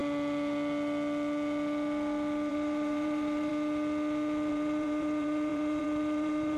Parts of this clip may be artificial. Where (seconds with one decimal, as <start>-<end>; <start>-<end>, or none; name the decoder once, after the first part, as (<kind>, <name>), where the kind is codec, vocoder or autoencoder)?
2.5-3.5 (vocoder, BigVGAN v2); 4.5-6.6